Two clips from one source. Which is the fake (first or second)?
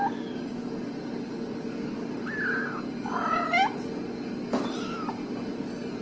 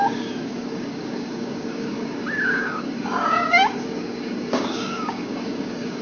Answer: second